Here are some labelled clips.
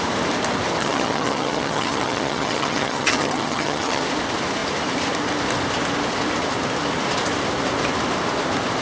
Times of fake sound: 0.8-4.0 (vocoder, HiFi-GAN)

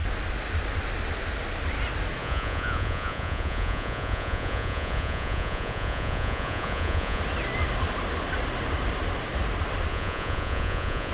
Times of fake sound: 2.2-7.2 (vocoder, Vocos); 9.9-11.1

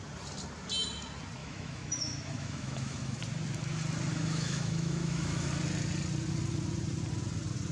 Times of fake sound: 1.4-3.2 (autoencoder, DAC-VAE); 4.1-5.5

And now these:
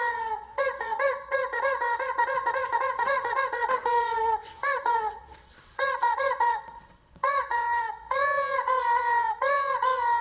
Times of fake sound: 0.0-10.2 (vocoder, WaveNeXt)